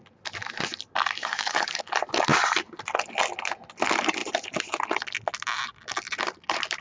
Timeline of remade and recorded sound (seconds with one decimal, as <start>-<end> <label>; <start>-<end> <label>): 0.0-1.2 recorded; 1.2-1.8 remade; 1.8-6.8 recorded